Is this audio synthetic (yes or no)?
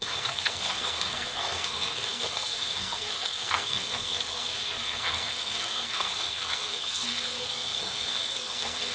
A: yes